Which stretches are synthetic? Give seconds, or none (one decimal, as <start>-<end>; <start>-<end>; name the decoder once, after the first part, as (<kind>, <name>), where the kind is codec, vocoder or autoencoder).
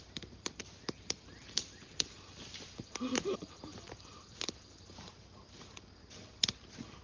none